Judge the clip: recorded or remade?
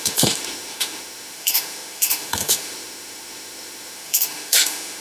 remade